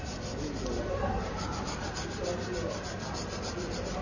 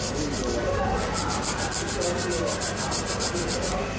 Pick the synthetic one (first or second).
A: first